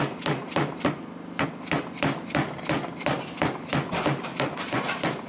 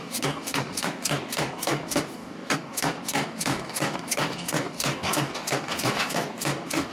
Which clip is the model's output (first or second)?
second